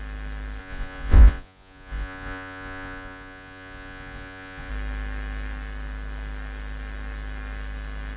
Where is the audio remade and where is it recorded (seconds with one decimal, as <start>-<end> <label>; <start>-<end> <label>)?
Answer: 0.0-0.6 recorded; 0.6-4.7 remade; 4.7-8.2 recorded